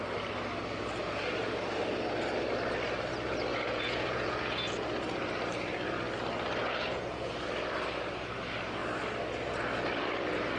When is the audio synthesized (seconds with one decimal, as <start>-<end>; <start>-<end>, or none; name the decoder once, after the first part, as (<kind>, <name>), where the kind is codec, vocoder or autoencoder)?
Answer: 3.5-4.7 (vocoder, Vocos); 6.6-7.3